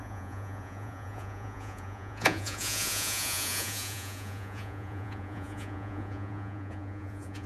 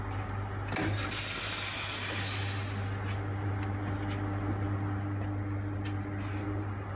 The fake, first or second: first